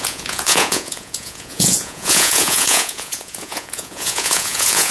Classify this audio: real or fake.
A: fake